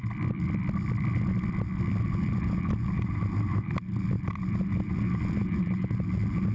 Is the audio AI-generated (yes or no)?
no